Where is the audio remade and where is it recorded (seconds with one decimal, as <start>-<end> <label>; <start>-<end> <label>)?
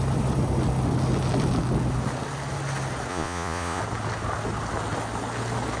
0.0-3.1 recorded; 3.1-3.8 remade; 3.8-5.8 recorded